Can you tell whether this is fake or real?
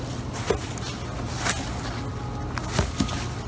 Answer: real